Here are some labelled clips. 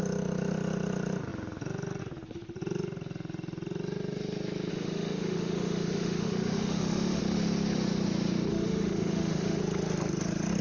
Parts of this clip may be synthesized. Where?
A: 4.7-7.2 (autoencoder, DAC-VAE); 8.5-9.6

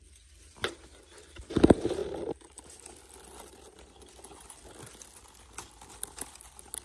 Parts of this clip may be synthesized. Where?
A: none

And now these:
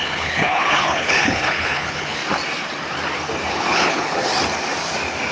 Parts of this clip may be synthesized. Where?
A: 0.0-2.2 (codec, HILCodec); 3.5-4.3

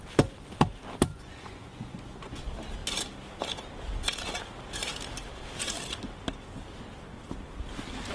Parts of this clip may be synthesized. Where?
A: 1.1-2.4 (vocoder, Vocos)